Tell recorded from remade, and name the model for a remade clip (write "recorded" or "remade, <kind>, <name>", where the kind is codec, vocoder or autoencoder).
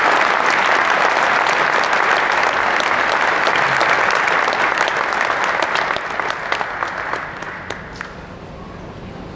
recorded